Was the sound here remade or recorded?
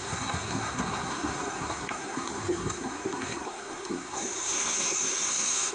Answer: remade